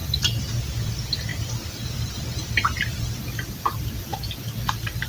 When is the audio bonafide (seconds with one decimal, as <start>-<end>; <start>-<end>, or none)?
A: 0.6-1.3; 4.4-5.1